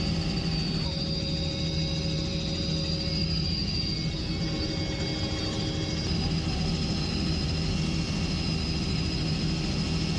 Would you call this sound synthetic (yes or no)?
no